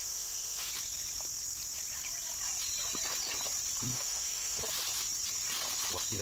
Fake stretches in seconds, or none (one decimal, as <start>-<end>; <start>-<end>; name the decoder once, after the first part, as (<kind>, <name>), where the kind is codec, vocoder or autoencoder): 0.0-0.7 (autoencoder, DAC-VAE); 3.9-4.6